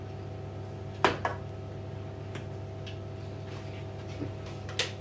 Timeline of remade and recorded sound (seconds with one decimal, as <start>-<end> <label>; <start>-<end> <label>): 0.0-5.0 recorded

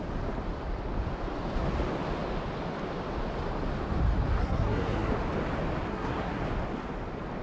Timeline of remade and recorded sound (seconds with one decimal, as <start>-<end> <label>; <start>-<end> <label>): 0.0-4.4 recorded; 4.4-5.1 remade; 5.1-5.9 recorded; 5.9-6.4 remade; 6.4-7.4 recorded

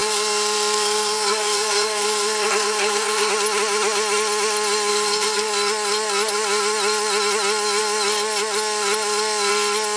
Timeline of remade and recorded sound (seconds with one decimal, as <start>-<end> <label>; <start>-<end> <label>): 0.0-3.3 remade; 3.3-4.9 recorded; 4.9-5.5 remade; 5.5-10.0 recorded

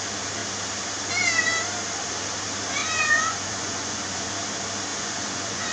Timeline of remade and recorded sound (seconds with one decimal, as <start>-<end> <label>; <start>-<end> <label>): 0.0-2.8 recorded; 2.8-4.3 remade; 4.3-4.9 recorded; 4.9-5.7 remade

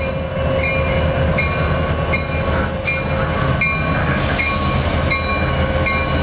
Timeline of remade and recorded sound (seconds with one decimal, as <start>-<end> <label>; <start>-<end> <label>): 0.0-4.0 recorded; 4.0-4.5 remade; 4.5-6.2 recorded

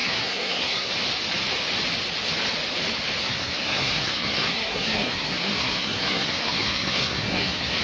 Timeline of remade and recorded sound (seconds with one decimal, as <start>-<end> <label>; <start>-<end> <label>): 0.0-0.9 remade; 0.9-3.2 recorded; 3.2-7.8 remade

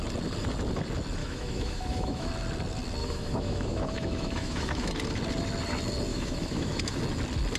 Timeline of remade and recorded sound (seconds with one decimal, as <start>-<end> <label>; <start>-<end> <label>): 0.0-1.2 recorded; 1.2-2.3 remade; 2.3-3.0 recorded; 3.0-4.9 remade; 4.9-6.1 recorded; 6.1-7.0 remade; 7.0-7.6 recorded